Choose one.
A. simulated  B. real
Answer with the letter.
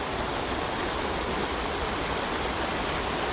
B